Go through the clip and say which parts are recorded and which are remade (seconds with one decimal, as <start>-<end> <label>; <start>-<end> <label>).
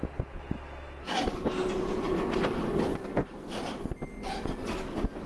0.0-3.0 recorded; 3.0-3.6 remade; 3.6-5.3 recorded